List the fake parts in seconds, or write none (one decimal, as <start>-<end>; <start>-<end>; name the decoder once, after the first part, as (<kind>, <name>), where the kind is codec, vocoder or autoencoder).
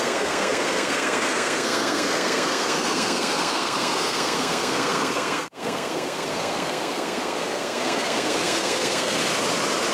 0.0-9.2 (codec, SNAC)